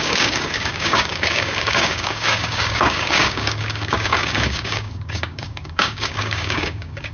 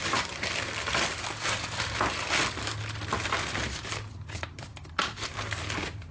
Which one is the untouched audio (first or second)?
second